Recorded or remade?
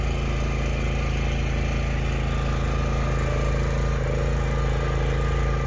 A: recorded